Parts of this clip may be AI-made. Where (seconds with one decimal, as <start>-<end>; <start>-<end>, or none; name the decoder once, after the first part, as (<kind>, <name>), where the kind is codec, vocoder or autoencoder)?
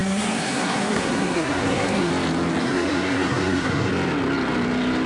0.0-2.1 (codec, SNAC); 2.6-3.9